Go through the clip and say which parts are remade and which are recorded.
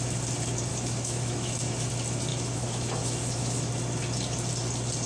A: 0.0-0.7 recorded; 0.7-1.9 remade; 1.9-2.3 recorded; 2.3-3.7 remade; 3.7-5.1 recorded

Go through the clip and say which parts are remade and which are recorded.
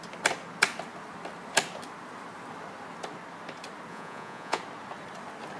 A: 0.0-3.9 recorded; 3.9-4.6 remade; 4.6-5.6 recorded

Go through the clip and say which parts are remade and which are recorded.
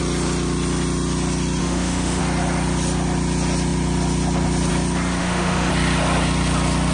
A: 0.0-1.6 recorded; 1.6-2.2 remade; 2.2-5.2 recorded; 5.2-5.7 remade; 5.7-6.9 recorded